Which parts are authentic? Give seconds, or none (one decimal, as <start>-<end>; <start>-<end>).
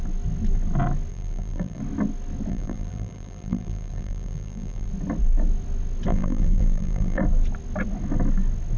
0.0-1.1; 1.8-2.5; 4.9-6.1; 7.2-8.8